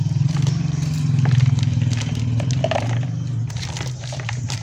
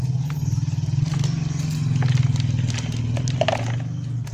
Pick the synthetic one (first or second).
first